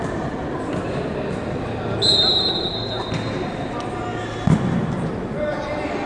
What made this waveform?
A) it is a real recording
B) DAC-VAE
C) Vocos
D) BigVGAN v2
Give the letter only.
A